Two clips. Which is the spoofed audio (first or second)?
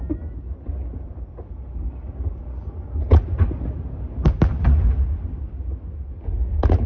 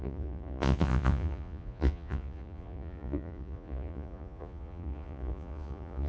second